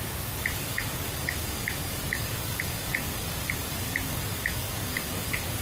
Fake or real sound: fake